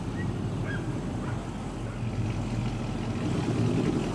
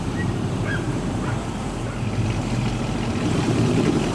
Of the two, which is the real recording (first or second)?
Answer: first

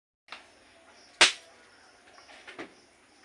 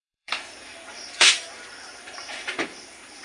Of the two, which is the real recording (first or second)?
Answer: first